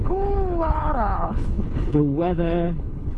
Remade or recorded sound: remade